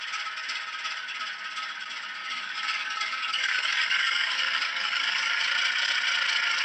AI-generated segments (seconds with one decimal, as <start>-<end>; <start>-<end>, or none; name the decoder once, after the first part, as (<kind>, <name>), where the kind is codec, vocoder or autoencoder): 2.2-5.4 (codec, DAC)